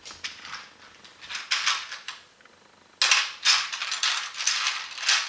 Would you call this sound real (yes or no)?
yes